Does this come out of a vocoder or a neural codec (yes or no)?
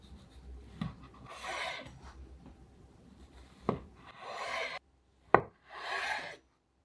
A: yes